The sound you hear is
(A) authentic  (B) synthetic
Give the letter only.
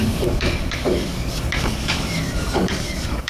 B